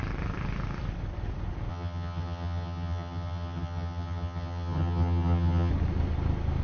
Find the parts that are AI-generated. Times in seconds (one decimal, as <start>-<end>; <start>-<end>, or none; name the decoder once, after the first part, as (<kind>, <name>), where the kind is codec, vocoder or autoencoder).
1.7-5.7 (vocoder, HiFi-GAN)